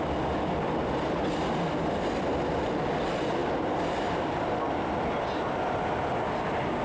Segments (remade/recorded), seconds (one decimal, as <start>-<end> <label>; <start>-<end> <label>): 0.0-6.8 recorded